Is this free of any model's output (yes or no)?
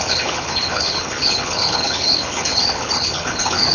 no